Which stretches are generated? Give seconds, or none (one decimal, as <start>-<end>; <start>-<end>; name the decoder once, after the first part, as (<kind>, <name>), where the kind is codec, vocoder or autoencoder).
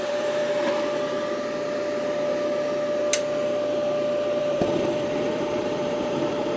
0.0-0.4 (vocoder, BigVGAN v2); 4.4-6.6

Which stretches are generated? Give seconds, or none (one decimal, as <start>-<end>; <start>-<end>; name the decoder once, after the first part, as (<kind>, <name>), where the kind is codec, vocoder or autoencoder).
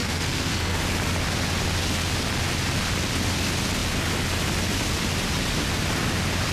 0.0-0.8 (codec, SNAC)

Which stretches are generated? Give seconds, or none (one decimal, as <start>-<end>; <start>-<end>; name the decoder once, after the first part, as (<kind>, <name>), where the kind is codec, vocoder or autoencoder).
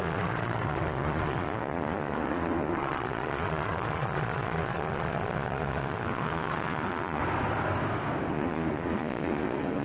0.0-7.2 (vocoder, Vocos); 8.3-9.8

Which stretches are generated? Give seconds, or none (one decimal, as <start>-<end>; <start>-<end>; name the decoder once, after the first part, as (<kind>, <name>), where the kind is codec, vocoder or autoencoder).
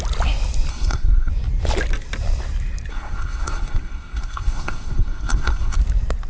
0.7-1.3 (codec, SNAC); 2.9-5.8